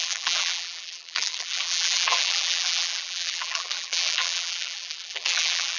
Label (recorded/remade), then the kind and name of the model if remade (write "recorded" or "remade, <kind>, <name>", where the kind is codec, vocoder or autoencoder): remade, vocoder, BigVGAN v2